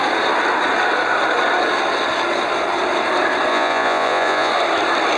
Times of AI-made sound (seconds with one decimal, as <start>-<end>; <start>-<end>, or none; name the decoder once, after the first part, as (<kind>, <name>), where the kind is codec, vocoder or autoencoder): 3.5-4.5 (vocoder, Vocos)